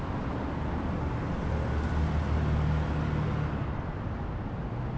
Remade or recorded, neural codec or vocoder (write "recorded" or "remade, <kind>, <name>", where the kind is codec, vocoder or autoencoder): recorded